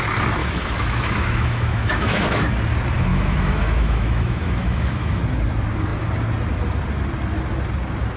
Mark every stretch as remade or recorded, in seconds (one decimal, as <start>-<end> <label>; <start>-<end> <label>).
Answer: 0.0-0.4 recorded; 0.4-2.4 remade; 2.4-3.1 recorded; 3.1-5.2 remade; 5.2-8.2 recorded